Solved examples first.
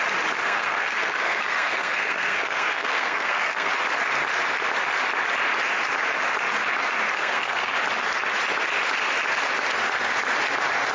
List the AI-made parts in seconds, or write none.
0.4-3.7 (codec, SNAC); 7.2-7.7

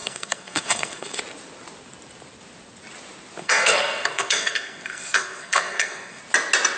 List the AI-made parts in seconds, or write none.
0.0-1.2 (codec, SNAC); 3.4-6.2